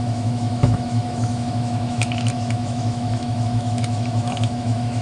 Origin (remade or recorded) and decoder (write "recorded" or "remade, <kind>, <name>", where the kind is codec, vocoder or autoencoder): remade, autoencoder, DAC-VAE